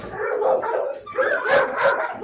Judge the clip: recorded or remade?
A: recorded